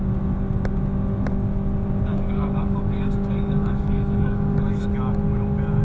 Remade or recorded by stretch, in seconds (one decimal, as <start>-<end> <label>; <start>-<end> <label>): 0.0-2.1 recorded; 2.1-4.8 remade; 4.8-5.8 recorded